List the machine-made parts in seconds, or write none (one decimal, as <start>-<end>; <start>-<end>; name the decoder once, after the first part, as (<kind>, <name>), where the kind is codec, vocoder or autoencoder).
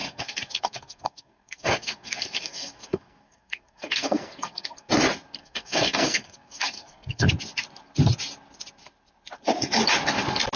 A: 0.0-4.9 (codec, SNAC); 5.4-7.3